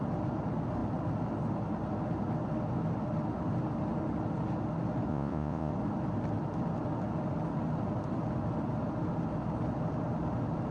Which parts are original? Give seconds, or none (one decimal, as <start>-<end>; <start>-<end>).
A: 0.0-5.1; 5.7-10.7